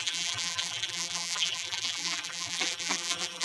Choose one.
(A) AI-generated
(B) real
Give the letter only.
A